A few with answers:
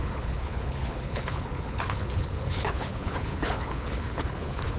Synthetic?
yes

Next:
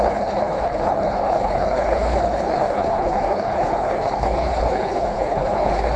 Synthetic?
yes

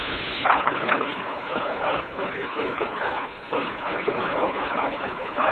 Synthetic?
yes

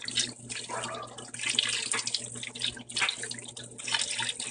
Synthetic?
no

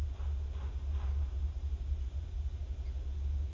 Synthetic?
no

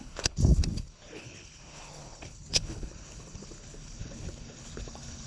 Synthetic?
yes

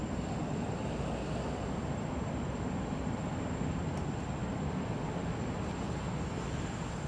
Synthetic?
no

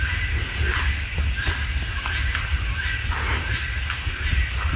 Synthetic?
no